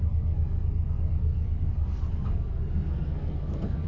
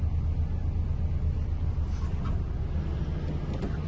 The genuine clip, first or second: second